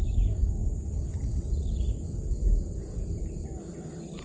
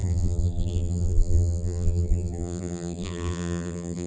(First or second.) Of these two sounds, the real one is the first